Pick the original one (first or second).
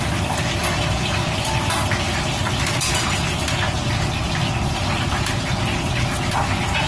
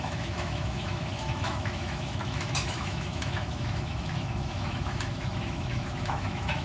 first